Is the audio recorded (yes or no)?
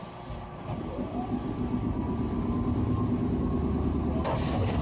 yes